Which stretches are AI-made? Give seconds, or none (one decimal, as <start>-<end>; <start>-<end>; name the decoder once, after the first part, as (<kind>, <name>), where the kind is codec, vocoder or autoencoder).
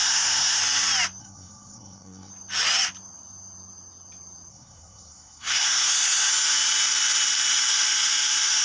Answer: 0.0-0.6 (codec, SNAC); 1.2-2.3; 4.5-6.3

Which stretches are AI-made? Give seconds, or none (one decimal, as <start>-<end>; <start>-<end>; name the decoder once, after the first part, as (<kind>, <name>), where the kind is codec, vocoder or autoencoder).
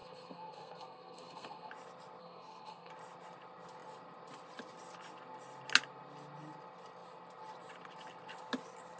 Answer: 0.0-1.7 (codec, SNAC); 2.2-2.9